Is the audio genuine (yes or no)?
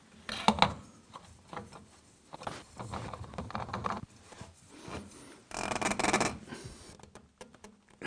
yes